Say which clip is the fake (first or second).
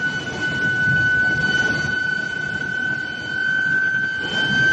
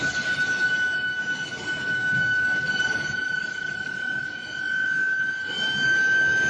second